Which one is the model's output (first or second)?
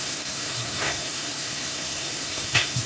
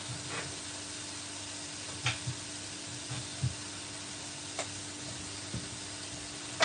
first